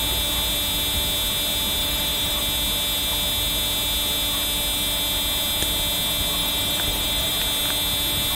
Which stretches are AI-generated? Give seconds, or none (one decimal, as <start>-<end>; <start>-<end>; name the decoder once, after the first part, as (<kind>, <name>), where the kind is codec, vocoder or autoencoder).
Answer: 1.8-2.4 (vocoder, BigVGAN v2); 6.4-7.3